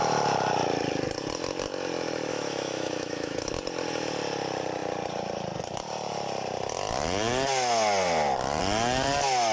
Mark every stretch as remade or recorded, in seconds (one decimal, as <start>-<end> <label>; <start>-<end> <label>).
0.0-2.3 recorded; 2.3-3.5 remade; 3.5-9.5 recorded